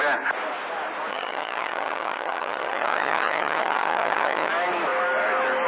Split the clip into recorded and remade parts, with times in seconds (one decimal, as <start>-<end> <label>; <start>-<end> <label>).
0.0-1.1 recorded; 1.1-4.5 remade; 4.5-5.7 recorded